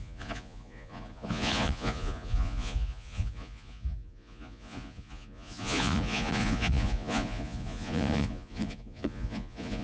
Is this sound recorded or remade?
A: remade